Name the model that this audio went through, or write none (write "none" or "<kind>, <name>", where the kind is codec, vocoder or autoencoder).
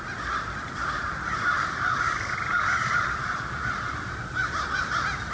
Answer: none